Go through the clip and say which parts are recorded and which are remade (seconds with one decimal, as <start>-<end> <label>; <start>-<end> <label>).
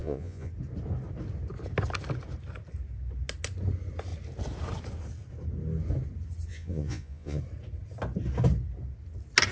0.0-0.5 remade; 0.5-6.5 recorded; 6.5-7.4 remade; 7.4-9.5 recorded